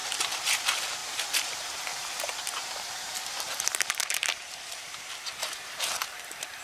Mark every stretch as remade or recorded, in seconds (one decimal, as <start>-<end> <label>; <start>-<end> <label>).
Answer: 0.0-0.6 remade; 0.6-1.0 recorded; 1.0-5.0 remade; 5.0-5.4 recorded; 5.4-6.0 remade; 6.0-6.6 recorded